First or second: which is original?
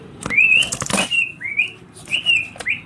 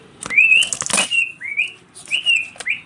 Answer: second